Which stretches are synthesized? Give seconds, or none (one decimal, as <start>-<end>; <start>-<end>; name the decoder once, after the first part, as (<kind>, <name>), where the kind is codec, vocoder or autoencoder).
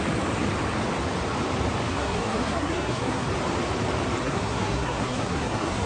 1.9-3.3 (codec, SNAC); 4.2-5.9